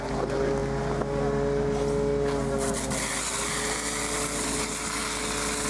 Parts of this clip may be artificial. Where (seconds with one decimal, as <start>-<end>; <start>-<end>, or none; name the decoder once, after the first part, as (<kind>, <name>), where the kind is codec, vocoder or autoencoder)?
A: none